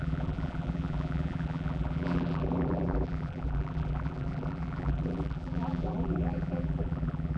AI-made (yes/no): yes